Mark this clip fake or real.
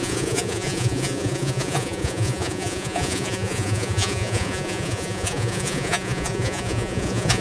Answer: fake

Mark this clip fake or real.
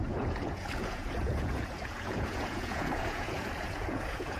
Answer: fake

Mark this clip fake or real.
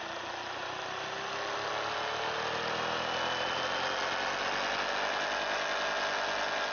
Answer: real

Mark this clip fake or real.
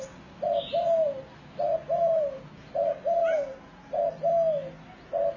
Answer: real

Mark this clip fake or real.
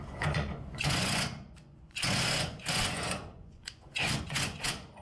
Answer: fake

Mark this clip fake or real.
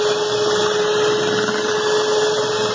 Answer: real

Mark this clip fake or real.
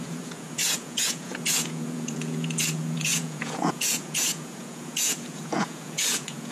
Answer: fake